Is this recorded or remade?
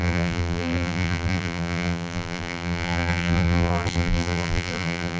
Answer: remade